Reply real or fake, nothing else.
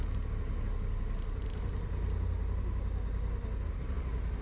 real